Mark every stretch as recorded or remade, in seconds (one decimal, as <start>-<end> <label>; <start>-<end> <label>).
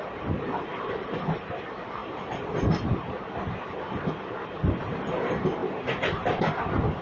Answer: 0.0-7.0 recorded